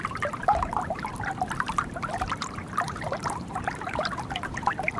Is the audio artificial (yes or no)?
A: yes